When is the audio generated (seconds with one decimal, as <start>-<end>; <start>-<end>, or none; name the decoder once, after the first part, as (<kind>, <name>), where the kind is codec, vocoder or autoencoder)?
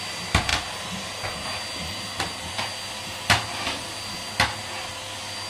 none